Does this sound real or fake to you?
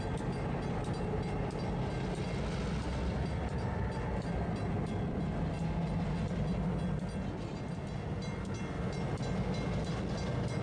real